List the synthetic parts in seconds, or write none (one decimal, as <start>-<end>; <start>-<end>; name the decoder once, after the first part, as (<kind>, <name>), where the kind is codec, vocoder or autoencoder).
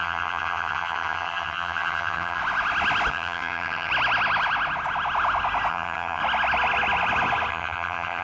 0.0-2.4 (vocoder, HiFi-GAN); 3.1-3.9; 5.7-6.2; 7.5-8.2